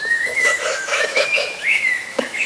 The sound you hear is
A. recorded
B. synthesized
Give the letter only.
B